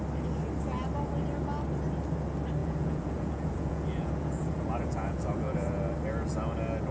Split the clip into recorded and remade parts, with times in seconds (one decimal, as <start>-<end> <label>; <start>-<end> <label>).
0.0-2.6 recorded; 2.6-5.8 remade; 5.8-6.9 recorded